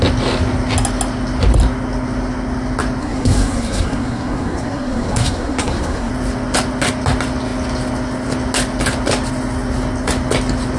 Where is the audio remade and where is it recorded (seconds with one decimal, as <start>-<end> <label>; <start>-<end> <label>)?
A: 0.0-3.0 recorded; 3.0-6.1 remade; 6.1-10.8 recorded